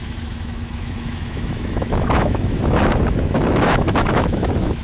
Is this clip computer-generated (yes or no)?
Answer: yes